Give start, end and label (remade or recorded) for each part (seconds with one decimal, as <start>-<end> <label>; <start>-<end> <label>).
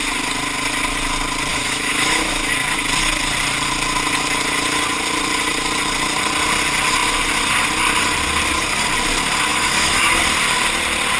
0.0-1.5 recorded; 1.5-2.5 remade; 2.5-9.5 recorded; 9.5-10.2 remade; 10.2-11.2 recorded